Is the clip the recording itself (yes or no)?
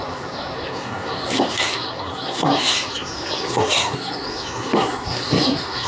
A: no